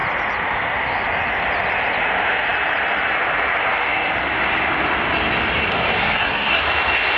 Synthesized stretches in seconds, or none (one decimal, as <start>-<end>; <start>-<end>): 6.0-6.6